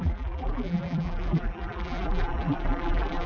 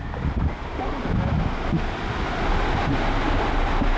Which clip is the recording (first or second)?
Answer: second